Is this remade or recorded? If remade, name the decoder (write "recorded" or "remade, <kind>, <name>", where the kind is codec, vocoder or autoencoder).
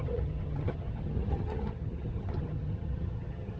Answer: remade, vocoder, HiFi-GAN